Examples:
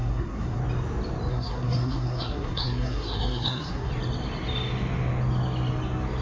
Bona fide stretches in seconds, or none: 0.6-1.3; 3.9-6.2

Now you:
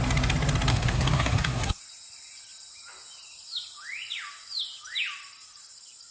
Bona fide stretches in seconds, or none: 0.0-0.7; 1.8-6.1

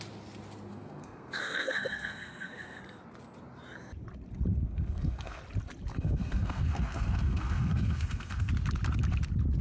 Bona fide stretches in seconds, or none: 0.0-0.7; 2.8-4.5; 5.4-5.9; 8.5-9.6

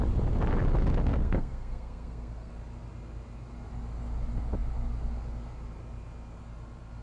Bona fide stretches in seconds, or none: 0.0-1.1; 2.5-7.0